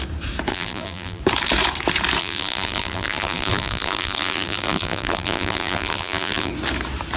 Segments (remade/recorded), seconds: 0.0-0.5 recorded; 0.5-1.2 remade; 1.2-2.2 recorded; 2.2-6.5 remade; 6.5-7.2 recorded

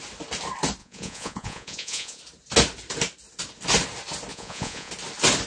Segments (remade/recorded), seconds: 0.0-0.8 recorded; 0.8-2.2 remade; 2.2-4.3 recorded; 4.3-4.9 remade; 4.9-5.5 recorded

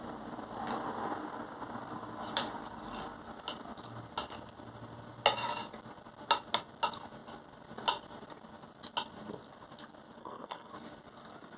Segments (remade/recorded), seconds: 0.0-10.2 recorded; 10.2-10.7 remade; 10.7-11.6 recorded